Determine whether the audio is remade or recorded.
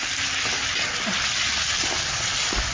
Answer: recorded